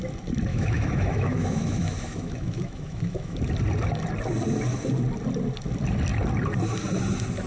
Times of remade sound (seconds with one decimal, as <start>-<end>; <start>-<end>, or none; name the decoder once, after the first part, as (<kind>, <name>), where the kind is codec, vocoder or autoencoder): 0.5-3.4 (autoencoder, DAC-VAE)